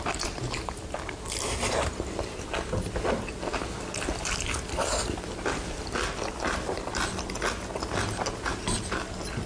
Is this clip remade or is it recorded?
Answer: recorded